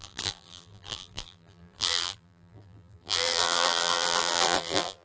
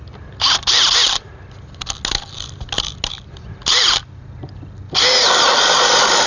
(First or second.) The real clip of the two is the second